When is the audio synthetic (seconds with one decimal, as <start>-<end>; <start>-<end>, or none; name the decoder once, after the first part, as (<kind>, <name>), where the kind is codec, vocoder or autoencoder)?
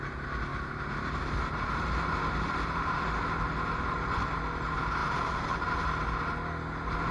0.5-3.0 (vocoder, BigVGAN v2); 5.0-5.8